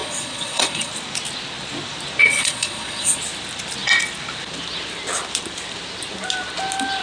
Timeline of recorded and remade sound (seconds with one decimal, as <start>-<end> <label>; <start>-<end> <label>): 0.0-0.9 remade; 0.9-2.2 recorded; 2.2-3.2 remade; 3.2-7.0 recorded